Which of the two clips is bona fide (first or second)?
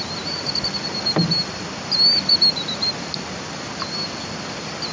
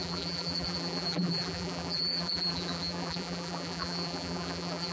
first